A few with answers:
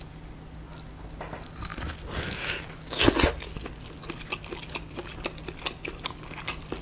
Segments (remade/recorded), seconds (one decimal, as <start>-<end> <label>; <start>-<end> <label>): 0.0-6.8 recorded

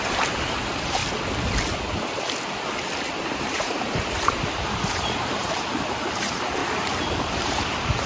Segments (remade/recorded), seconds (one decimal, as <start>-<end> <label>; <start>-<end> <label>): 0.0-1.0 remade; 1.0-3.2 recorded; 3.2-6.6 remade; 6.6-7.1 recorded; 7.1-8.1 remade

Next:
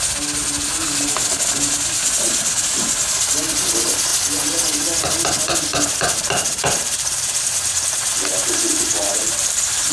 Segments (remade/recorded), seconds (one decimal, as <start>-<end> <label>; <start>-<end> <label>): 0.0-5.7 recorded; 5.7-9.9 remade